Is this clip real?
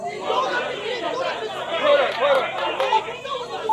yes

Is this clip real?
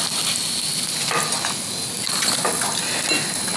yes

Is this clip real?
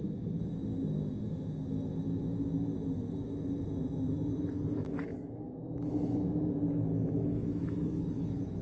no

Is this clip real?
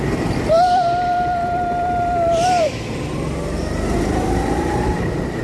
no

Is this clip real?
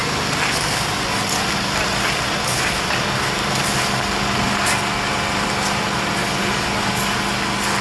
yes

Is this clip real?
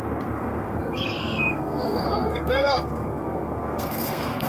no